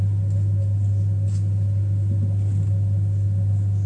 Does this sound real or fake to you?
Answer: real